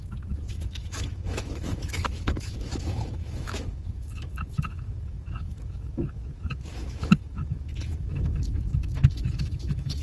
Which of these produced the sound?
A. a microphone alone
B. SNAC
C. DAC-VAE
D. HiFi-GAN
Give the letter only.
C